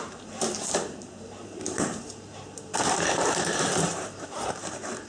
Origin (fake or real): fake